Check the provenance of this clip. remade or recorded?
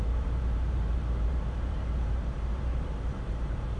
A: remade